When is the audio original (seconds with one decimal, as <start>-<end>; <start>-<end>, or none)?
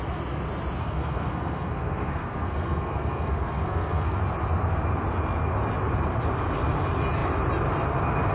0.0-0.8; 4.2-8.3